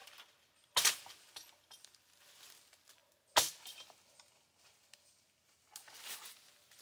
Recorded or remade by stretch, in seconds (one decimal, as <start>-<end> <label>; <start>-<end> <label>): 0.0-6.8 recorded